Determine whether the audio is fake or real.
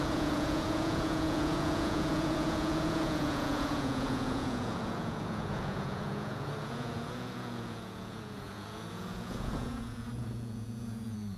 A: fake